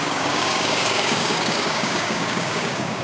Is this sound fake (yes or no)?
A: yes